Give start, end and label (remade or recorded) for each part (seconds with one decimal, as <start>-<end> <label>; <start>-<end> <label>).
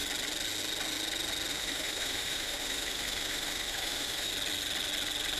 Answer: 0.0-1.5 recorded; 1.5-4.3 remade; 4.3-5.4 recorded